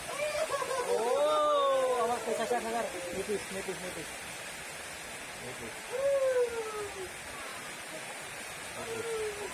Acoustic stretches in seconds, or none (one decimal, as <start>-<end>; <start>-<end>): 0.0-7.5; 8.1-9.5